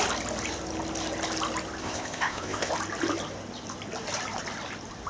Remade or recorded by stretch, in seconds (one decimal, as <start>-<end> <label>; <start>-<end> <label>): 0.0-1.8 recorded; 1.8-2.7 remade; 2.7-5.1 recorded